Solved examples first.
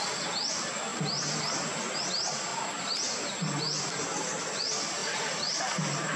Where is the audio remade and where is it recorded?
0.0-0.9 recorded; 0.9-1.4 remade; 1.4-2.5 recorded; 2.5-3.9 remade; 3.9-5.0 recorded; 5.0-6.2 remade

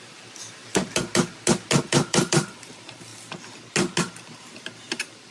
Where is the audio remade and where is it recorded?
0.0-0.6 remade; 0.6-1.8 recorded; 1.8-3.1 remade; 3.1-4.1 recorded; 4.1-5.3 remade

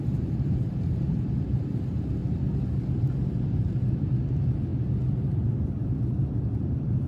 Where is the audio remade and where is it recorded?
0.0-2.2 remade; 2.2-3.0 recorded; 3.0-4.7 remade; 4.7-6.5 recorded; 6.5-7.1 remade

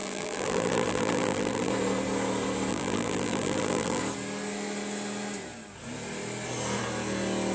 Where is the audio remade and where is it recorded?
0.0-1.7 remade; 1.7-2.7 recorded; 2.7-4.0 remade; 4.0-7.5 recorded

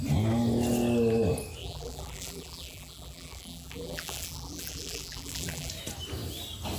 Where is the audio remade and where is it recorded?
0.0-1.6 recorded; 1.6-5.7 remade; 5.7-6.8 recorded